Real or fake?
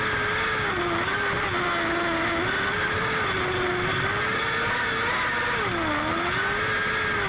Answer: real